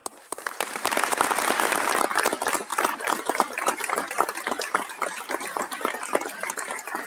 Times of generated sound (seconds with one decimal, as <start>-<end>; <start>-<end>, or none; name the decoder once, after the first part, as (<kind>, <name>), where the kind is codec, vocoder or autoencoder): 0.0-1.8 (vocoder, BigVGAN v2); 2.7-7.1